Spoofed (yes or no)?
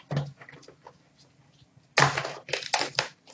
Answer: no